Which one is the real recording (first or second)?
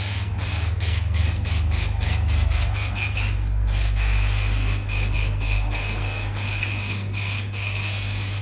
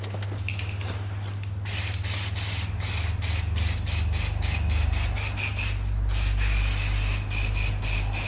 second